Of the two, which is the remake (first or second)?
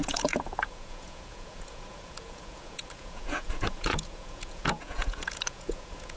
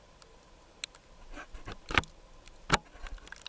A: first